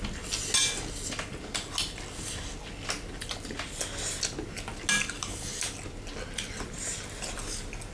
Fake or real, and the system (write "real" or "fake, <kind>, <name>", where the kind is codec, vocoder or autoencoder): real